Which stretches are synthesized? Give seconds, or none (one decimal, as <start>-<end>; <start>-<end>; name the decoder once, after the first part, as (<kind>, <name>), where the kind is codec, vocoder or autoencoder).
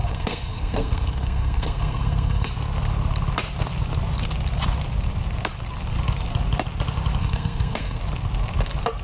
0.0-2.5 (codec, SNAC); 7.2-8.0